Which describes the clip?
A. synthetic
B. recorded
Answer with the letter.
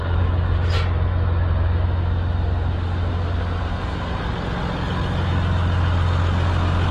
B